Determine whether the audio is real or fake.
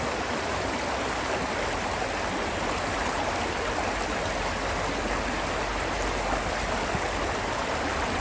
real